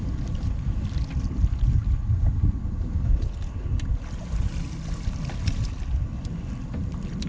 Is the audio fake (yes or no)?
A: no